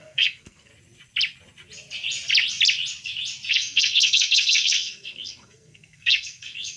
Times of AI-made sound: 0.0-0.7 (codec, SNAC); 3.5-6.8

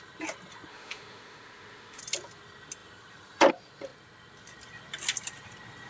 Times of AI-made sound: 0.7-2.0 (autoencoder, DAC-VAE)